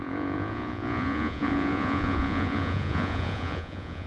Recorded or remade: remade